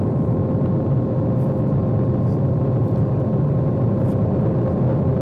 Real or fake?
real